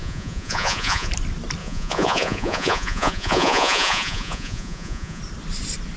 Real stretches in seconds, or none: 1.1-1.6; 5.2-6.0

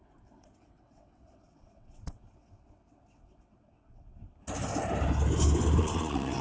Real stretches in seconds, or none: 4.2-5.8

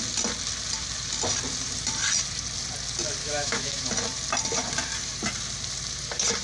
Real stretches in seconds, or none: 0.0-3.2; 3.9-6.4

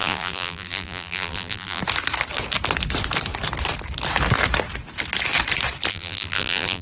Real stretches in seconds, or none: 1.8-5.9

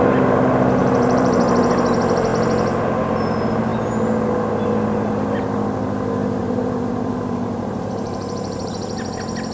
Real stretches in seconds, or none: 0.0-0.8; 1.7-6.4; 8.7-9.5

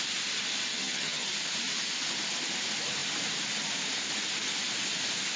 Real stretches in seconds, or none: 0.0-0.7; 1.3-5.4

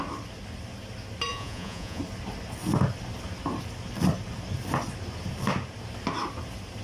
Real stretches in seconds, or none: 0.0-1.3; 2.0-6.8